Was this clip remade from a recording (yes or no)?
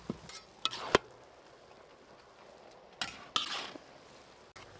no